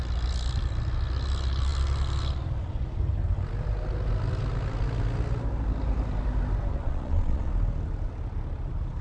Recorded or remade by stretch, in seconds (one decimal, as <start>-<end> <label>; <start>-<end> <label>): 0.0-6.7 recorded; 6.7-7.5 remade; 7.5-9.0 recorded